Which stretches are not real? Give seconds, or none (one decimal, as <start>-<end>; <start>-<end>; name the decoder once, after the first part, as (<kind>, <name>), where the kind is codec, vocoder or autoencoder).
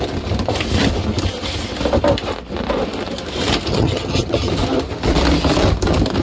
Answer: 3.7-4.5 (vocoder, HiFi-GAN)